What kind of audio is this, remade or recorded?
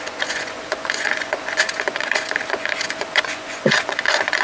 remade